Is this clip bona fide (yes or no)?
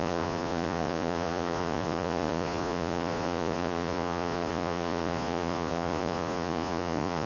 no